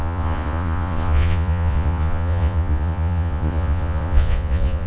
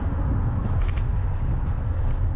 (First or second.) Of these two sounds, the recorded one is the second